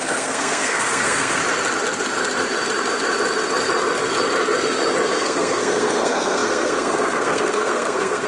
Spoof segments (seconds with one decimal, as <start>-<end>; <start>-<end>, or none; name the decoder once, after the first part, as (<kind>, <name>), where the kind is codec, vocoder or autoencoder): 0.0-1.4 (codec, SNAC); 5.1-8.3